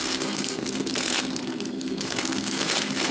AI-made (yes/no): yes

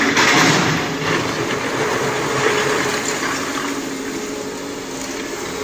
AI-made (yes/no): no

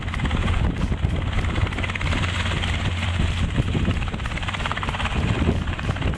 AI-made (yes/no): yes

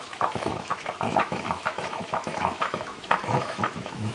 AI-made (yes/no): yes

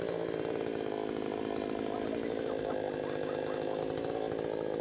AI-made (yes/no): no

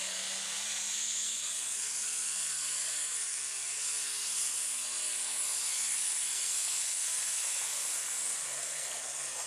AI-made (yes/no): yes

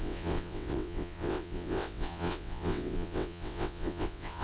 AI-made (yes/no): yes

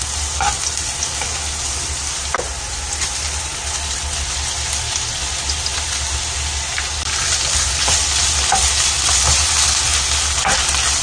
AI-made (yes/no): no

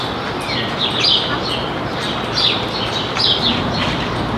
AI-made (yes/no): no